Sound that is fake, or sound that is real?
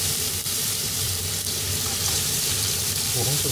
fake